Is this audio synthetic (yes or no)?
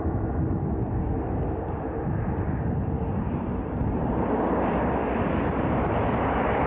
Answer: no